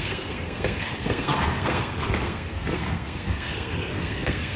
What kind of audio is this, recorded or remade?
remade